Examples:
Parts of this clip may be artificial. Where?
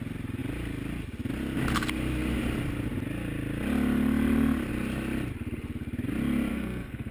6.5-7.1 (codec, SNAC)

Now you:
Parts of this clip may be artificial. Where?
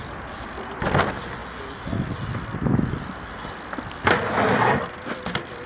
none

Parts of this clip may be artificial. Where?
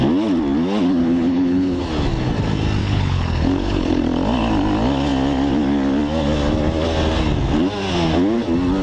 1.0-1.8 (codec, HILCodec); 2.8-4.0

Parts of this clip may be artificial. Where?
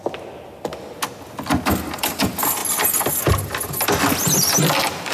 none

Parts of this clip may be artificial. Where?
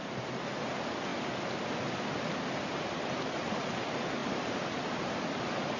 4.2-5.1 (vocoder, BigVGAN v2)